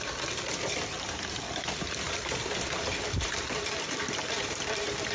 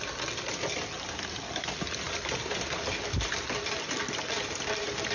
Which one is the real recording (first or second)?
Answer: second